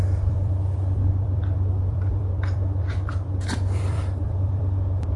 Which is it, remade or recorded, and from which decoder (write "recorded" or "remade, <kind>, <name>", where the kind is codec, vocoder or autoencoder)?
remade, vocoder, BigVGAN v2